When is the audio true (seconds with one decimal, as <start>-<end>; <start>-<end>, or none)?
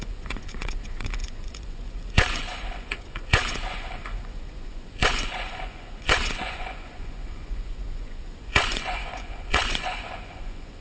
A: none